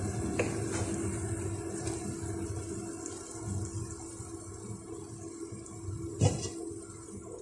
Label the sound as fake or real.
real